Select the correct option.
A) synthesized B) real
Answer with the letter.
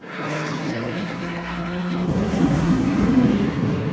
A